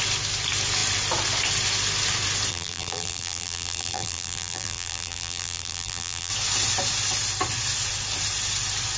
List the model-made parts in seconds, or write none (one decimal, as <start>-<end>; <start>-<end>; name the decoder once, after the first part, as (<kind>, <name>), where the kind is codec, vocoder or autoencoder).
2.5-6.3 (vocoder, BigVGAN v2)